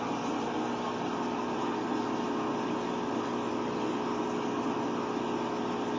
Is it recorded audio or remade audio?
recorded